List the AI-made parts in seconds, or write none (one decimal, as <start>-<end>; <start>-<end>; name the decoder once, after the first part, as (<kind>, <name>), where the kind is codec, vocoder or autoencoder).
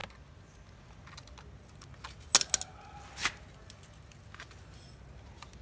none